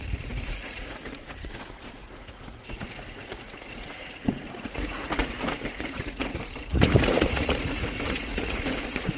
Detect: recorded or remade remade